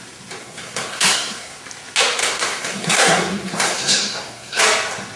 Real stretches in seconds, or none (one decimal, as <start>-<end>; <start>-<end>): 0.0-0.4; 1.6-2.2; 4.6-5.2